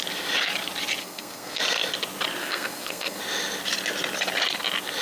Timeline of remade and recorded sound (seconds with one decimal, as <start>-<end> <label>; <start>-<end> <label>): 0.0-1.0 recorded; 1.0-1.6 remade; 1.6-2.4 recorded; 2.4-3.2 remade; 3.2-5.0 recorded